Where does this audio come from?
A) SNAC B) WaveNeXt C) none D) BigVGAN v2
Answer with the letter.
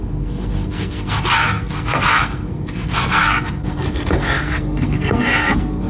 A